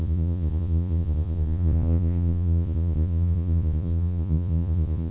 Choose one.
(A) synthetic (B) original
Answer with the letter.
A